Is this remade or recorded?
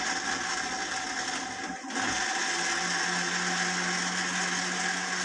recorded